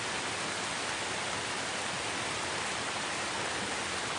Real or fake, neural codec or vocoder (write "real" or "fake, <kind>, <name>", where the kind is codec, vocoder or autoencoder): real